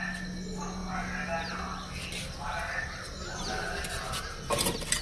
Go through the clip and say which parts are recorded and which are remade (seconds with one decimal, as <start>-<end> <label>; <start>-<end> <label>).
0.0-5.0 recorded